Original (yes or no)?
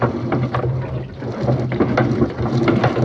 yes